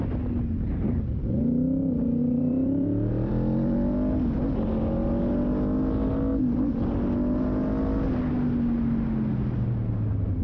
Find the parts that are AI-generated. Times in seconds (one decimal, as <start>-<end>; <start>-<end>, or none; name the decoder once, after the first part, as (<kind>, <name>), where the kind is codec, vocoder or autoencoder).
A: 2.2-3.3 (vocoder, BigVGAN v2)